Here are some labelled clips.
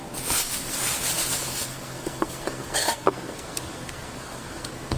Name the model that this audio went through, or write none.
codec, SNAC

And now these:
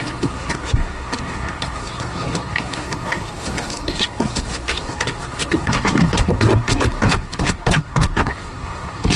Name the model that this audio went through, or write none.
codec, SNAC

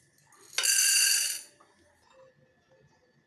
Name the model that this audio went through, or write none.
none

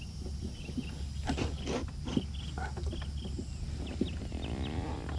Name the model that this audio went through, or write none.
none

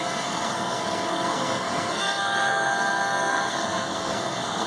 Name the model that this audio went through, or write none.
codec, SNAC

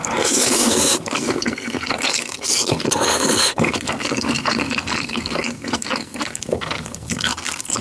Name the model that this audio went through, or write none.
codec, SNAC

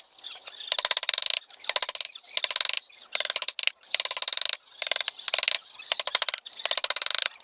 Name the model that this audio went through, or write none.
none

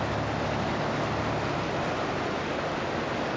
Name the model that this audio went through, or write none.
none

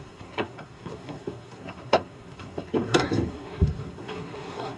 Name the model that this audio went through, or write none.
codec, SNAC